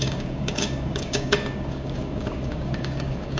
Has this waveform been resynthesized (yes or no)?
yes